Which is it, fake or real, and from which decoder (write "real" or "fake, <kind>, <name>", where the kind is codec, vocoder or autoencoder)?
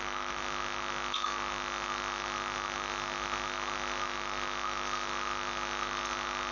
real